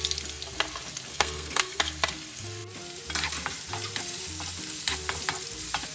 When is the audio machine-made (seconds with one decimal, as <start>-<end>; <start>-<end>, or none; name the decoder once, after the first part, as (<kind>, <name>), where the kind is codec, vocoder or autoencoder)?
1.1-1.8 (codec, SNAC)